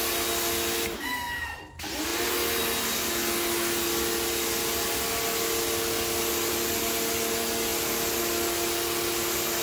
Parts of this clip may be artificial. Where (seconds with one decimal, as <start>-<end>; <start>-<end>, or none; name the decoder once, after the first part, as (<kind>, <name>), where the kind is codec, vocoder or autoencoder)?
none